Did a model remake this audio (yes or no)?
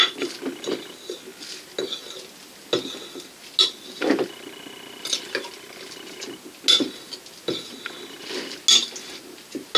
no